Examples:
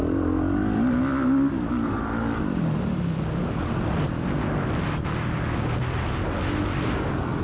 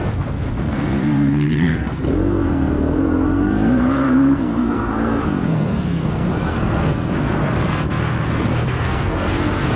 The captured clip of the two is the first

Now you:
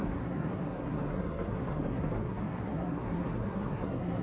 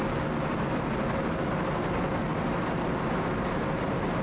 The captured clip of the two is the second